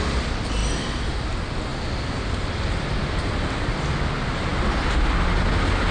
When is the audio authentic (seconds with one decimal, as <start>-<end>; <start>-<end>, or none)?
0.0-5.9